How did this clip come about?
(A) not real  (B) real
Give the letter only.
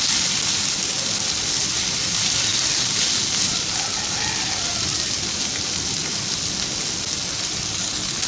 B